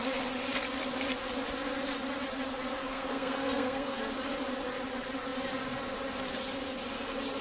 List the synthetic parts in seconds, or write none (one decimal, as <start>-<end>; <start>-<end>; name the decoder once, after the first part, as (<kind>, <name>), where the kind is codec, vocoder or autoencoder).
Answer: 2.8-4.0 (codec, SNAC)